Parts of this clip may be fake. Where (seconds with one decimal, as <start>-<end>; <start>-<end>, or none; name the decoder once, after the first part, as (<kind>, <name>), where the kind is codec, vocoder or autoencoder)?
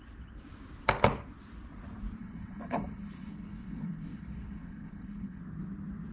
2.2-5.4 (codec, HILCodec)